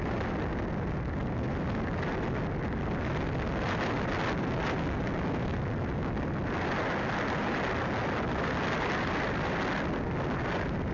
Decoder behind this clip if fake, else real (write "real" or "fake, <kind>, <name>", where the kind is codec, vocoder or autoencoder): real